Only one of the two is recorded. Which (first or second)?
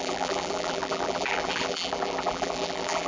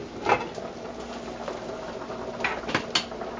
second